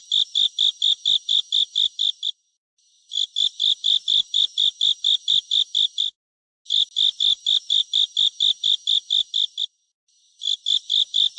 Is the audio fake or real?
real